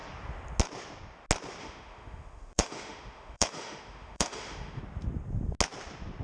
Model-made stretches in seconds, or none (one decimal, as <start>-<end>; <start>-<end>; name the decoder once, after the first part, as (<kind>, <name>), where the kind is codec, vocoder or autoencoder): 1.6-4.8 (autoencoder, DAC-VAE)

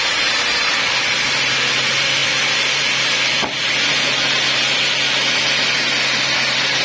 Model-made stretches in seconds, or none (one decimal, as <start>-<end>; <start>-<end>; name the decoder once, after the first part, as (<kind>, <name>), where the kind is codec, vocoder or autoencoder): none

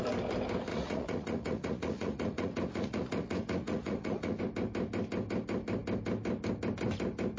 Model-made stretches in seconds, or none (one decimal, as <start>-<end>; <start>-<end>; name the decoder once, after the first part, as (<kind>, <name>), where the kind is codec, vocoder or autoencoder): 0.7-4.4 (vocoder, Vocos)